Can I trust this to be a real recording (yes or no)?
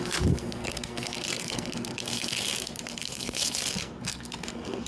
no